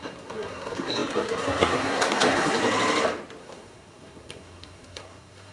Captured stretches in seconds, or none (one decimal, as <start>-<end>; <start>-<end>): 2.6-3.4